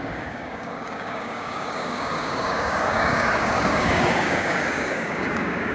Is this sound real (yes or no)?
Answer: no